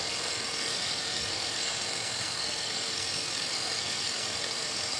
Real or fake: fake